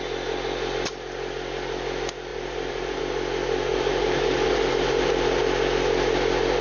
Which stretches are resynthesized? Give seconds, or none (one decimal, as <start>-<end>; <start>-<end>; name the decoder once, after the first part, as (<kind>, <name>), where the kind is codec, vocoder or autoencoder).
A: 2.3-3.0 (vocoder, BigVGAN v2); 3.7-5.4